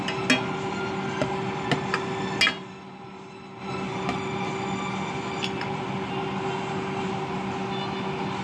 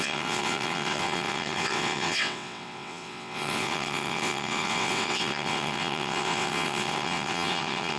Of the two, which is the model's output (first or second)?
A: second